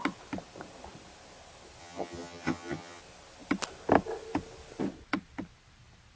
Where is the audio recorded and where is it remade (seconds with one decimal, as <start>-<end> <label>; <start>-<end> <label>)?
0.0-1.8 recorded; 1.8-3.0 remade; 3.0-6.2 recorded